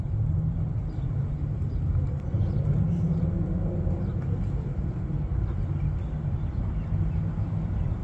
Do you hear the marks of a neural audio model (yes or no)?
no